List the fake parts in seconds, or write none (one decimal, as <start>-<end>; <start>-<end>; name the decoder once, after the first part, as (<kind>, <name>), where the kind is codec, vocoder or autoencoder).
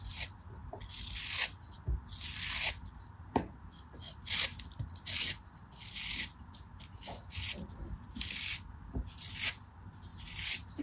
none